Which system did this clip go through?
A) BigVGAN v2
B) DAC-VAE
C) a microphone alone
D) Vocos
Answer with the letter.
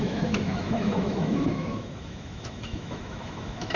B